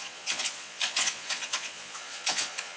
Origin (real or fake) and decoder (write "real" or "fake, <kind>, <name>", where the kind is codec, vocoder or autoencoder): fake, vocoder, Vocos